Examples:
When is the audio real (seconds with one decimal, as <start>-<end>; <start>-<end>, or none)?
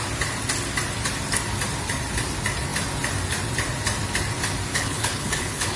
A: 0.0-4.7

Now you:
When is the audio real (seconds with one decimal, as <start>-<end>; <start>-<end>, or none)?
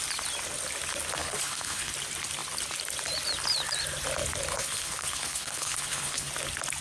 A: 0.0-1.2; 1.9-4.5; 6.3-6.8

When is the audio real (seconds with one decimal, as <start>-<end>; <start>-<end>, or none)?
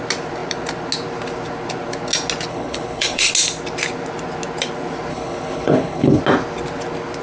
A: 0.0-2.5; 3.3-5.1; 6.2-7.2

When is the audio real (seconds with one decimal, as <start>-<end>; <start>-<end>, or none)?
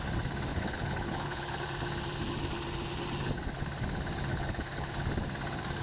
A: 0.0-0.5; 1.6-4.3; 4.9-5.8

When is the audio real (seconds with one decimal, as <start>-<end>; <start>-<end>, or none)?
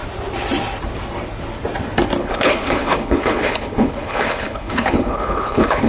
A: 0.0-2.2